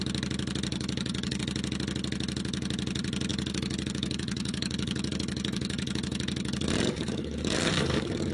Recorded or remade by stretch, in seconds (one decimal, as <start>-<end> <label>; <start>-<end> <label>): 0.0-0.7 recorded; 0.7-1.4 remade; 1.4-3.3 recorded; 3.3-8.3 remade